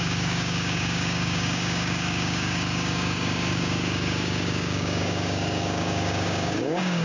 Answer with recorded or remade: remade